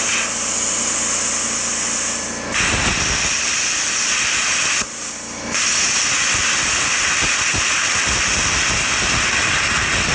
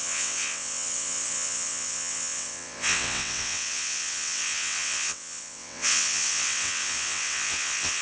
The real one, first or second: first